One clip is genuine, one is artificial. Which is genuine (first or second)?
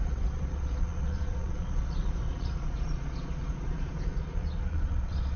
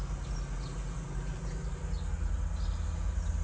second